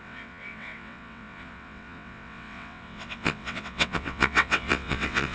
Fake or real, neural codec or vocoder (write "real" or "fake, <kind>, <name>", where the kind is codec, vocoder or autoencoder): fake, vocoder, WaveNeXt